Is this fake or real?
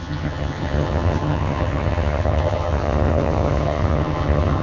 fake